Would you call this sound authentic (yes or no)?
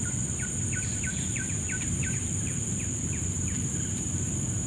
no